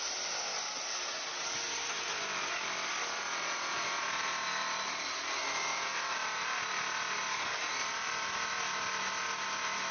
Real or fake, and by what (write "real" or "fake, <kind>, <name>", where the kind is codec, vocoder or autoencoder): real